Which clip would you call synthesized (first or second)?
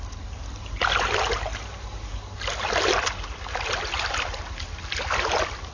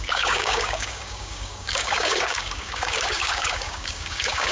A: second